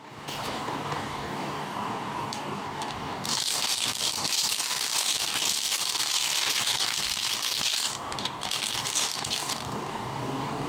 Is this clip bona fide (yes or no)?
no